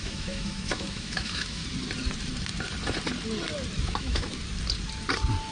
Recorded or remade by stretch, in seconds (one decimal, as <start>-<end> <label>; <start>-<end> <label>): 0.0-1.6 remade; 1.6-3.8 recorded; 3.8-4.3 remade; 4.3-5.5 recorded